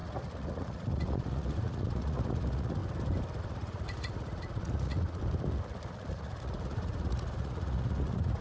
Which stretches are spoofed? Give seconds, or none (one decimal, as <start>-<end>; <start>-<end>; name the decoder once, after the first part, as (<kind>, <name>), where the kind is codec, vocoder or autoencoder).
0.0-2.8 (vocoder, Vocos); 3.4-5.2; 6.1-8.4